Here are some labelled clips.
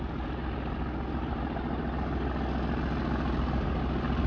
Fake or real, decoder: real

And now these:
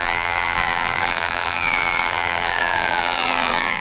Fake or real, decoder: fake, vocoder, BigVGAN v2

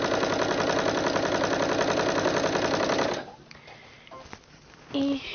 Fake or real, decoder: real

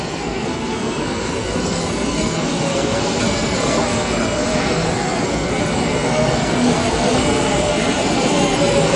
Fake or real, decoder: fake, codec, SNAC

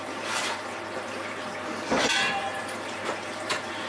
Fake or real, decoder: fake, vocoder, BigVGAN v2